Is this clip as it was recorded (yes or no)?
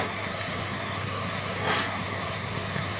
no